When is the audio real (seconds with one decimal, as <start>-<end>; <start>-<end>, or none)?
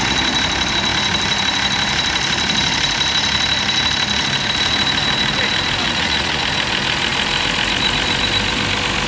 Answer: 0.0-5.8; 6.4-9.1